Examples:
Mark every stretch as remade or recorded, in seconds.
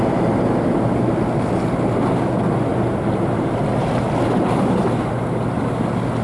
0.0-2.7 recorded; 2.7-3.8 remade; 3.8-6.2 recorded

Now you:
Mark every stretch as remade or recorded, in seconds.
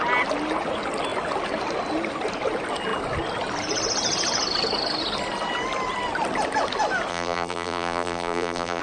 0.0-7.1 recorded; 7.1-8.8 remade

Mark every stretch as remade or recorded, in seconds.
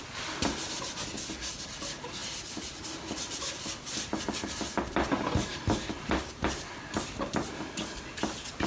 0.0-5.5 recorded; 5.5-6.1 remade; 6.1-8.7 recorded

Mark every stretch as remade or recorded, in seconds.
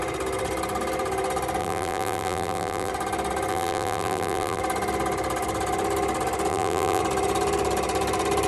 0.0-1.6 recorded; 1.6-2.9 remade; 2.9-3.5 recorded; 3.5-4.6 remade; 4.6-6.5 recorded; 6.5-7.0 remade; 7.0-8.5 recorded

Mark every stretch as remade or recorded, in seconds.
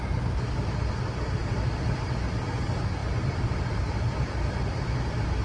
0.0-1.4 recorded; 1.4-2.1 remade; 2.1-5.4 recorded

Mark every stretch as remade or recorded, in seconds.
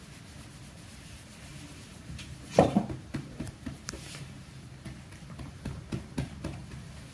0.0-1.5 recorded; 1.5-4.5 remade; 4.5-7.1 recorded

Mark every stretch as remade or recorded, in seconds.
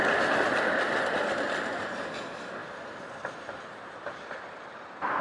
0.0-5.2 recorded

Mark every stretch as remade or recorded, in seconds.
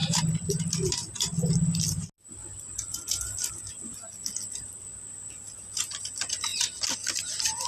0.0-3.5 recorded; 3.5-6.5 remade; 6.5-7.2 recorded; 7.2-7.7 remade